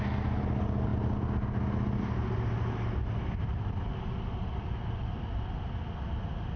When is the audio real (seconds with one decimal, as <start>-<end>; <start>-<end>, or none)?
0.0-6.6